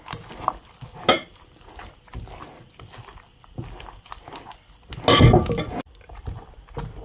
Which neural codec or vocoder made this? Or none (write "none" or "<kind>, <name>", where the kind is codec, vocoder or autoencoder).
none